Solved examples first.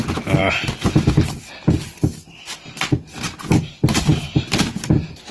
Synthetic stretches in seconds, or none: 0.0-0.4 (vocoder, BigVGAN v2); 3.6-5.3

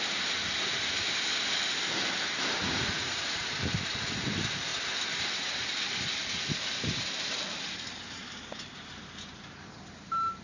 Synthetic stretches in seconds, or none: 2.6-3.4 (vocoder, Vocos)

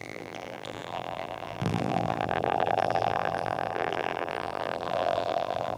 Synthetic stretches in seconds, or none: 0.0-5.8 (vocoder, BigVGAN v2)

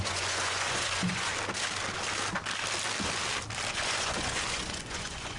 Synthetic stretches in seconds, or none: 0.0-1.3 (vocoder, Vocos); 3.7-5.4

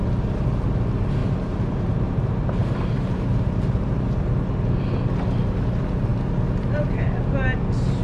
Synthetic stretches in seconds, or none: 1.2-4.3 (vocoder, BigVGAN v2)